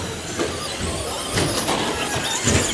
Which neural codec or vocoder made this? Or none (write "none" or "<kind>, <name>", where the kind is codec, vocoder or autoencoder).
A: none